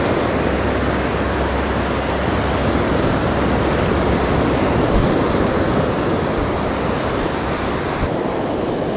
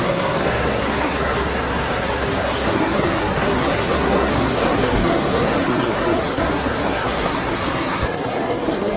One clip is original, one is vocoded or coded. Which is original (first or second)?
first